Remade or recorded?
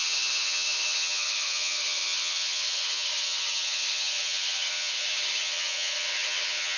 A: remade